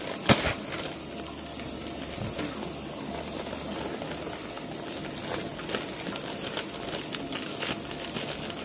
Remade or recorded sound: recorded